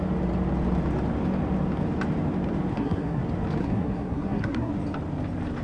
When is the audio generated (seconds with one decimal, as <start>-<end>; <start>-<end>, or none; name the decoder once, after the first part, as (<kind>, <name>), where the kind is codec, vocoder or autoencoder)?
2.7-3.2 (codec, SNAC); 3.6-4.7